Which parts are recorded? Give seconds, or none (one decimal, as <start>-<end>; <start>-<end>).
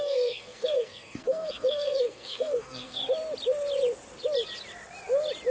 3.0-5.5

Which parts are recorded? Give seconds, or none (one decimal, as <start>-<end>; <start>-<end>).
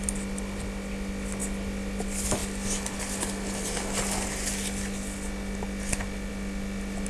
0.0-7.1